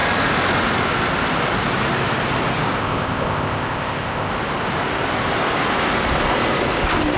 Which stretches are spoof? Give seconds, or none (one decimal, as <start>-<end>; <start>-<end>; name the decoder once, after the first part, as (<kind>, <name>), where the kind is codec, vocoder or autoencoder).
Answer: 2.8-4.3 (codec, ZipCodec)